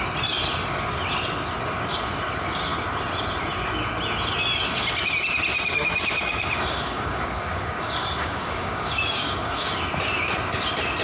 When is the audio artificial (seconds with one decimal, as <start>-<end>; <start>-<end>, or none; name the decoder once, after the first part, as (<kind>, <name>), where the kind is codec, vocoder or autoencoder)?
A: 5.5-9.8 (codec, DAC)